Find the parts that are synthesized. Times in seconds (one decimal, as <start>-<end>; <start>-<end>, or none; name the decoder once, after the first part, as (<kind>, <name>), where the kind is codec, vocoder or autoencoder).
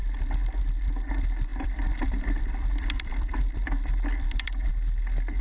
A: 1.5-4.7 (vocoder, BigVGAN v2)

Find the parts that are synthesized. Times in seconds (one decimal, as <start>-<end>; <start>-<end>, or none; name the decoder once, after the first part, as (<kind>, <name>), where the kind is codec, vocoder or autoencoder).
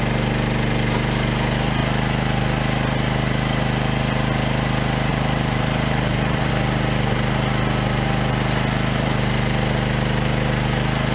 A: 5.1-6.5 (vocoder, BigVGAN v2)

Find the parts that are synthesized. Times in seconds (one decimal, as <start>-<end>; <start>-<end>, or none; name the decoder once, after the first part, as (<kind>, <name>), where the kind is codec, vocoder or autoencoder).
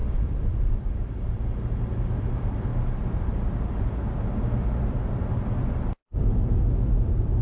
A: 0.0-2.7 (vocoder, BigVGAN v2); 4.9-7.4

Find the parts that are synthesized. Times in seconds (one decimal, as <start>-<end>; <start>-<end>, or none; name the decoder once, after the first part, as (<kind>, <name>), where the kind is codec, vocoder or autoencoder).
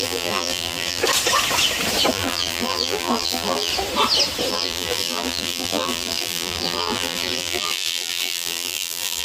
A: 0.0-1.0 (vocoder, BigVGAN v2); 2.1-3.7; 4.5-9.2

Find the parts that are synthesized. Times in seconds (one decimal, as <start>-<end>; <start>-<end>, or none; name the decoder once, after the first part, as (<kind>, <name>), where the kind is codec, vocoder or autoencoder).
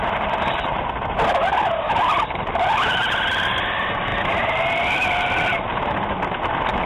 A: 0.0-1.5 (vocoder, BigVGAN v2); 2.5-5.5; 6.4-6.9